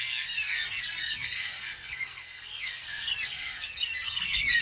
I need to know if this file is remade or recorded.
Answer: remade